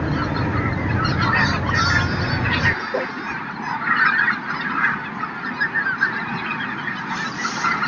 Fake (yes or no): no